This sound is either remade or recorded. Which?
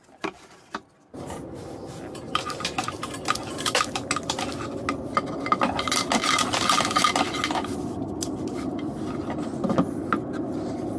recorded